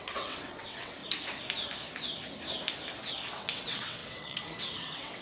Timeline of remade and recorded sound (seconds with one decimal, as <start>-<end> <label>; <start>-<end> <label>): 0.0-1.0 remade; 1.0-3.3 recorded; 3.3-5.2 remade